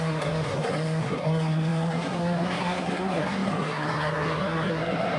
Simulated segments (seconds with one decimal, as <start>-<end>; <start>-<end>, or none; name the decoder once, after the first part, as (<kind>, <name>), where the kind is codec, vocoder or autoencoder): 0.0-5.2 (codec, SNAC)